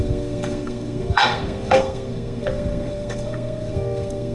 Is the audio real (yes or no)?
no